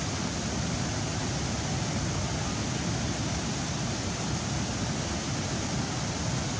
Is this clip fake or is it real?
real